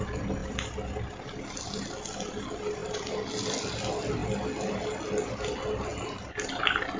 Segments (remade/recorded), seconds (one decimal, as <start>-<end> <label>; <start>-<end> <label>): 0.0-7.0 recorded